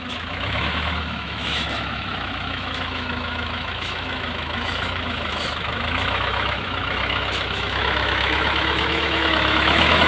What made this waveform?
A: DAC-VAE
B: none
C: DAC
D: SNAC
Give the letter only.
A